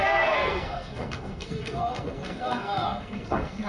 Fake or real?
fake